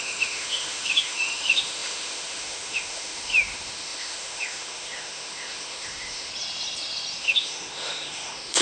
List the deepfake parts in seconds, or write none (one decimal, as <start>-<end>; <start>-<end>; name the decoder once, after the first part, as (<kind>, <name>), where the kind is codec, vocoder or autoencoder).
0.0-6.3 (autoencoder, DAC-VAE); 7.2-8.6